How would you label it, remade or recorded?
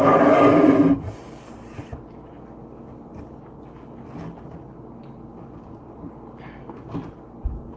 recorded